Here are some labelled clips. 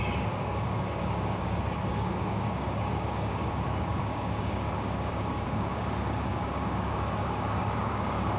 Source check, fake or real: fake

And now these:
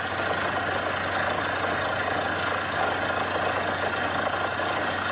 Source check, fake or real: real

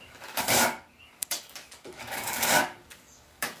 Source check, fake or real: fake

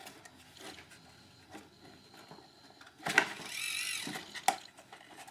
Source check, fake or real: real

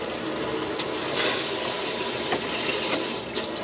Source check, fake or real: real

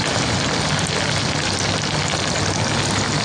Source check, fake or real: real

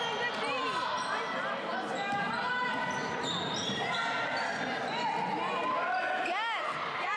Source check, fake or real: real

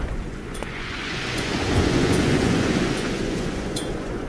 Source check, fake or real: fake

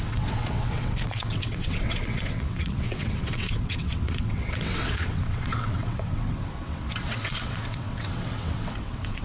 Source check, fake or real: fake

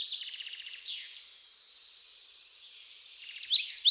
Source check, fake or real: real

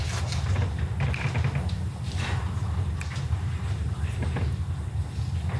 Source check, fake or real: real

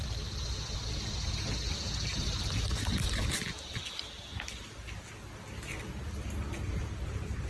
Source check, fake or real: real